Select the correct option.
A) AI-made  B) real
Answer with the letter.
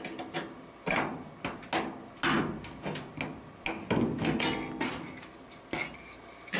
B